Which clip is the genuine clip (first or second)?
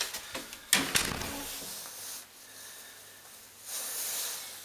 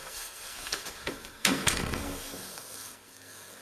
first